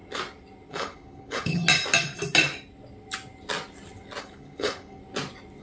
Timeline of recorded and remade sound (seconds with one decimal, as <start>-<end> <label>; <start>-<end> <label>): 0.0-0.7 recorded; 0.7-1.6 remade; 1.6-4.2 recorded; 4.2-5.0 remade; 5.0-5.6 recorded